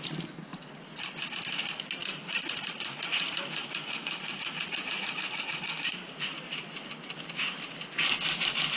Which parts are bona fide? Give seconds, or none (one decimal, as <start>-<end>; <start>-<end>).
0.0-2.1; 6.4-8.8